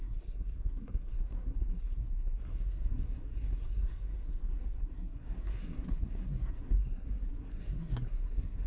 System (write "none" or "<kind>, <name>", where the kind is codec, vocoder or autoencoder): codec, SNAC